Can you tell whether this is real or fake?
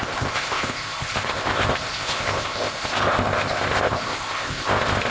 fake